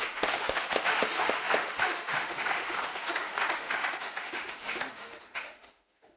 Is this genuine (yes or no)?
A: no